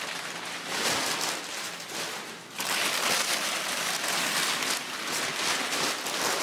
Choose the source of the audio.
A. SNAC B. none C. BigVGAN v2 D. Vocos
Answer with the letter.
B